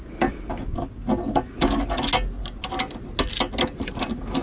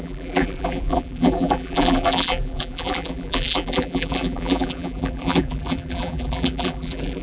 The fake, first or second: second